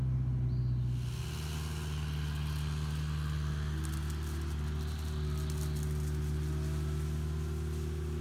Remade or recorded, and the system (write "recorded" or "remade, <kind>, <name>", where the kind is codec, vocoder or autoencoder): recorded